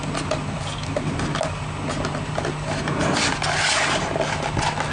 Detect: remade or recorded recorded